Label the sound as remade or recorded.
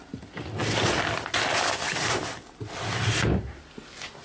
recorded